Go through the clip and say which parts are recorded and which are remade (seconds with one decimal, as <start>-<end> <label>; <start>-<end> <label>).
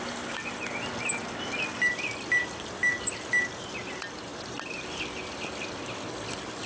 0.0-6.7 recorded